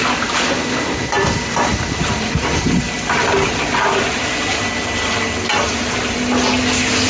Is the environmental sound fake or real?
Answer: real